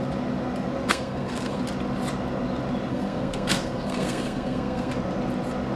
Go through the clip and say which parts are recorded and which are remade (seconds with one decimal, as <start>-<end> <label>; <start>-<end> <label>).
0.0-0.9 recorded; 0.9-1.6 remade; 1.6-2.9 recorded; 2.9-4.9 remade; 4.9-5.8 recorded